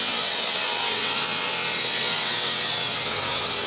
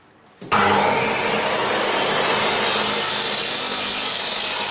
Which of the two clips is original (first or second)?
second